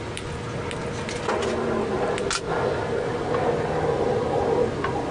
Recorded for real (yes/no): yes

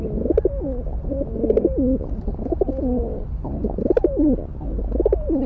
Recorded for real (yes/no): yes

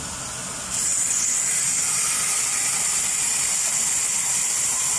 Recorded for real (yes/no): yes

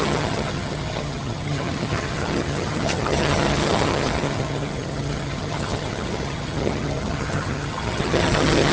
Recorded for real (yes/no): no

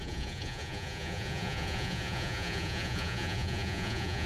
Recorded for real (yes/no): no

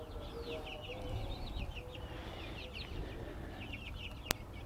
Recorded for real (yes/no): yes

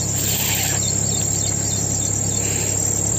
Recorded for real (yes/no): yes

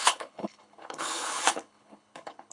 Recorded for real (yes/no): no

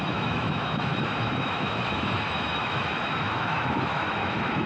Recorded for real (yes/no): no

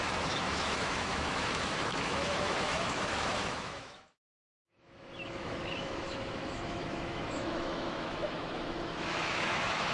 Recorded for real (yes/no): no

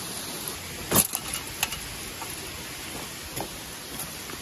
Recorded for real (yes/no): yes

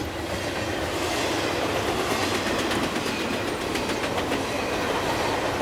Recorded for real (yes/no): yes